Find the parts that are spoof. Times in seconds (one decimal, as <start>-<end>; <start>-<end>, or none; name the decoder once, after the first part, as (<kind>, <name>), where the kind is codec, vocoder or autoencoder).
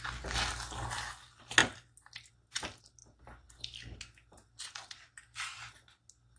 none